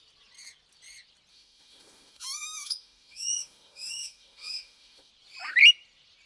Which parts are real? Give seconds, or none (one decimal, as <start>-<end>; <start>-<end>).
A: 0.0-1.3; 5.1-6.3